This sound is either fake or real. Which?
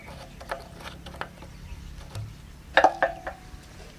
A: real